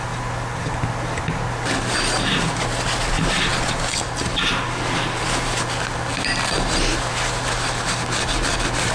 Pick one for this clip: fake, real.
real